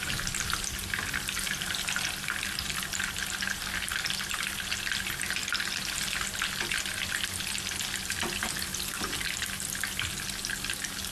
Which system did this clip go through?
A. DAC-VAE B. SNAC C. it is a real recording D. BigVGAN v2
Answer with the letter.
C